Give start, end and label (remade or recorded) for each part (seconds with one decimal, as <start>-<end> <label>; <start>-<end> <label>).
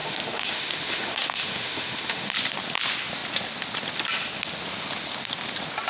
0.0-2.3 remade; 2.3-5.9 recorded